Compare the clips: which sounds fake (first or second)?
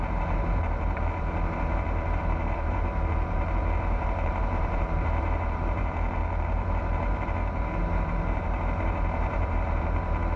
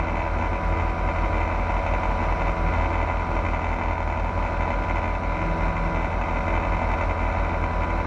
first